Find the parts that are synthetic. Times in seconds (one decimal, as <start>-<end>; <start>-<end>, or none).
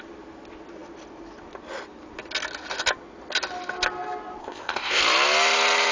4.4-5.0